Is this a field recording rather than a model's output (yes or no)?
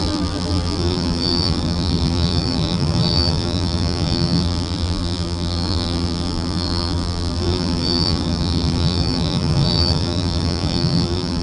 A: no